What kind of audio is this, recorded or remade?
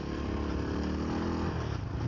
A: recorded